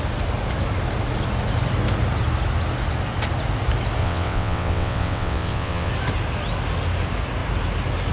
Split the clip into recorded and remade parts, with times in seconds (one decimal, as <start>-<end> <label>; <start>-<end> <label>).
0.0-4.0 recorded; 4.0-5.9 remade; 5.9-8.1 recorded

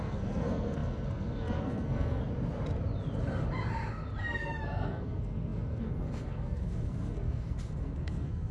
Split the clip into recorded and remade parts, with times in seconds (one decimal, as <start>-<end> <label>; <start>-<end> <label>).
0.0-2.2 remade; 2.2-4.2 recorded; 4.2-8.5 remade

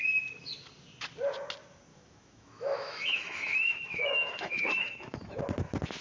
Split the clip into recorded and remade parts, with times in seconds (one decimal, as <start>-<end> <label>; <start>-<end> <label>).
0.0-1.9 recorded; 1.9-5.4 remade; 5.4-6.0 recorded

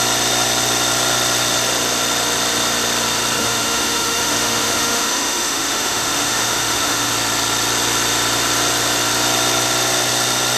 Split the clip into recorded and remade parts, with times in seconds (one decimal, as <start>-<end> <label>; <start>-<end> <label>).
0.0-3.4 recorded; 3.4-7.1 remade; 7.1-10.6 recorded

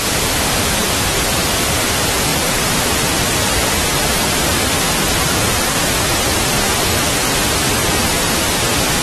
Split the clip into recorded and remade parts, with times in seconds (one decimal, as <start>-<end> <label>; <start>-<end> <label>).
0.0-2.3 recorded; 2.3-6.0 remade; 6.0-7.8 recorded; 7.8-8.6 remade; 8.6-9.0 recorded

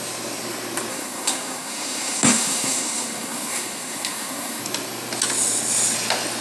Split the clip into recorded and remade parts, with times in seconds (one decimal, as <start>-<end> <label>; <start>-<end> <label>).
0.0-0.9 recorded; 0.9-4.6 remade; 4.6-6.4 recorded

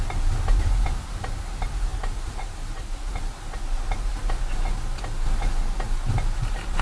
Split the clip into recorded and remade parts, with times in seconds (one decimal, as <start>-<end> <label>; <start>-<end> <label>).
0.0-6.8 recorded